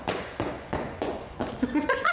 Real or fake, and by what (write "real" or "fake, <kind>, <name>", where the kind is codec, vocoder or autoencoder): fake, vocoder, Vocos